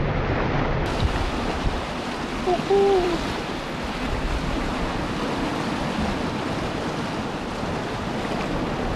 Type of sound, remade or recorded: recorded